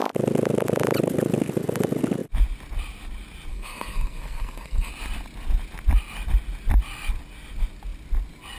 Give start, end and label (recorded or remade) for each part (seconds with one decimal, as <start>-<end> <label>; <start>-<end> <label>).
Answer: 0.0-3.5 recorded; 3.5-4.9 remade; 4.9-8.6 recorded